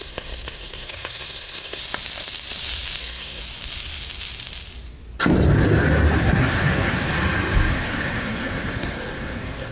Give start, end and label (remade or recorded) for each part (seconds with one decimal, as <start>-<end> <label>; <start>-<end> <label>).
0.0-1.8 remade; 1.8-3.0 recorded; 3.0-3.4 remade; 3.4-6.2 recorded; 6.2-7.1 remade; 7.1-7.7 recorded; 7.7-9.7 remade